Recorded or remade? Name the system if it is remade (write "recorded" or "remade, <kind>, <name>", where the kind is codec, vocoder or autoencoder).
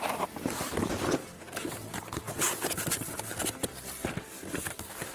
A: recorded